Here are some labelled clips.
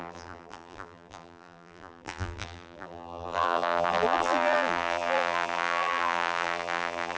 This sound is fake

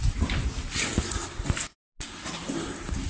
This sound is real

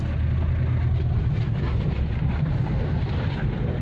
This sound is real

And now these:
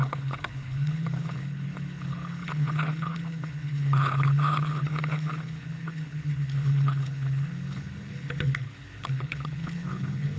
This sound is fake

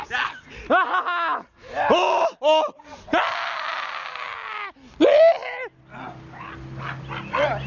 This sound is real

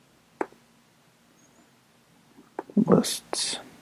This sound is real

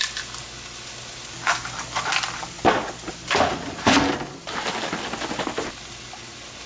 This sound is real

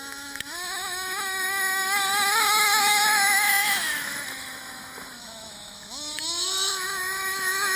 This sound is fake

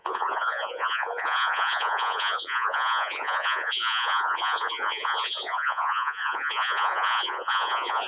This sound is fake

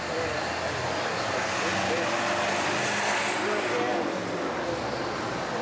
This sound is real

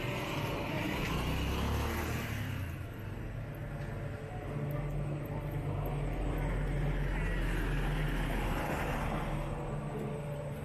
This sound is real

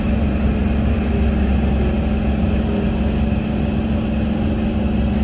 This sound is real